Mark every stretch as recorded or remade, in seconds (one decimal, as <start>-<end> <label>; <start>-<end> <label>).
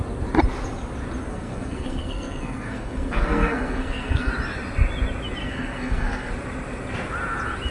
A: 0.0-1.3 recorded; 1.3-4.3 remade; 4.3-5.4 recorded; 5.4-6.3 remade; 6.3-7.7 recorded